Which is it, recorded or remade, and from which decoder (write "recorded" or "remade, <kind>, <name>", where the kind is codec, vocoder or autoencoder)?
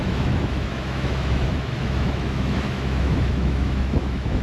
remade, autoencoder, DAC-VAE